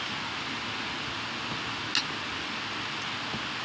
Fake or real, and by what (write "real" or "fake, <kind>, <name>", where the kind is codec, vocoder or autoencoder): real